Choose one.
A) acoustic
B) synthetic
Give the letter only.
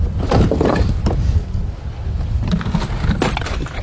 A